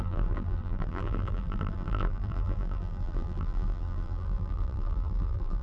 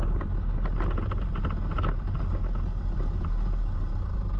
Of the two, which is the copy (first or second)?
first